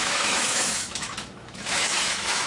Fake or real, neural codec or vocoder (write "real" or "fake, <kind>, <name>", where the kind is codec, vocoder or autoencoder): fake, autoencoder, DAC-VAE